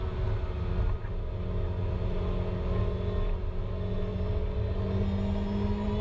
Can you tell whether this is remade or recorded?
recorded